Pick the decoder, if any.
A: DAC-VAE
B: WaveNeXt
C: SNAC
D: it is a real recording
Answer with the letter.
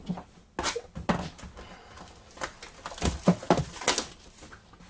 D